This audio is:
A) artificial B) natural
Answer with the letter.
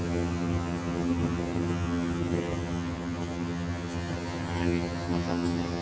A